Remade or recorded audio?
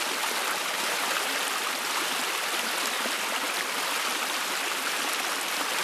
recorded